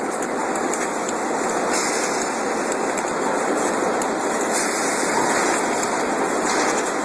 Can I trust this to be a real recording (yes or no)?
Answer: yes